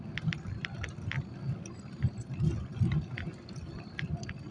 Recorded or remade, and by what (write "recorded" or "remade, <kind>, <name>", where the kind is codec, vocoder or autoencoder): recorded